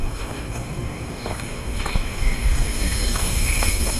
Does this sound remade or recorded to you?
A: remade